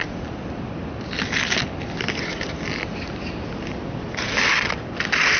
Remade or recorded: recorded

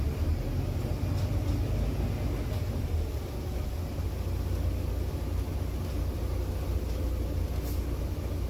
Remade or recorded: recorded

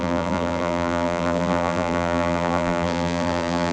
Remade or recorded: remade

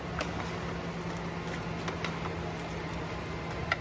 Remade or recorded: recorded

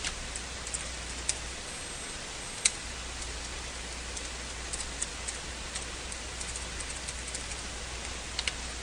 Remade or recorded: recorded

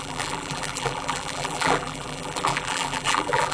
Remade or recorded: remade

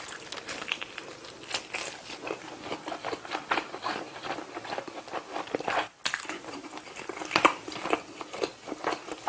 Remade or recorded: recorded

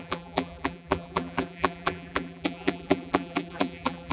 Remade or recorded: remade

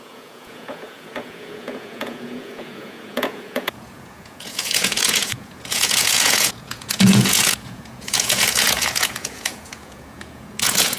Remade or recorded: remade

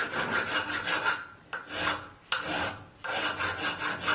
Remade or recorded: recorded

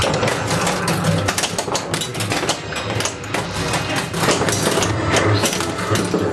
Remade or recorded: recorded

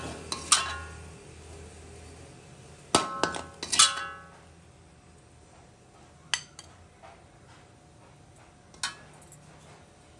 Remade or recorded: recorded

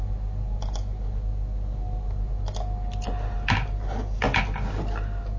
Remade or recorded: recorded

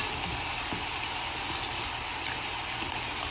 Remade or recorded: recorded